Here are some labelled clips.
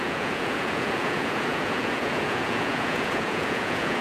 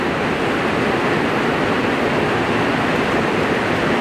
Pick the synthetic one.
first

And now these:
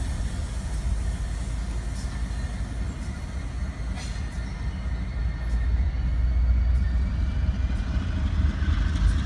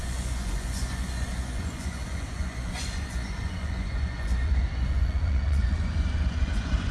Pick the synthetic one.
second